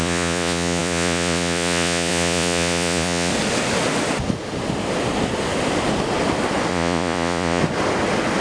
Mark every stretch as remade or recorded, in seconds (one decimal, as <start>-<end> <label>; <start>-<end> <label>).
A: 0.0-3.3 remade; 3.3-6.7 recorded; 6.7-7.6 remade; 7.6-8.4 recorded